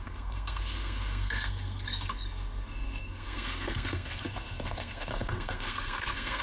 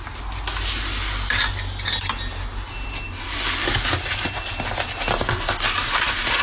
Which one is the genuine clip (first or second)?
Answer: second